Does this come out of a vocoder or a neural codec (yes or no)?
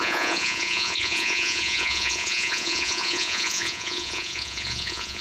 yes